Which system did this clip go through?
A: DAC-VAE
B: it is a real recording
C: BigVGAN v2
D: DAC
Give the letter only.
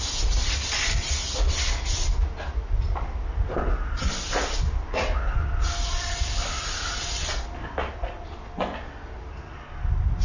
B